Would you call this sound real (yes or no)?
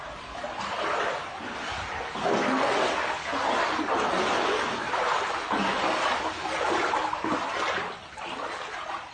yes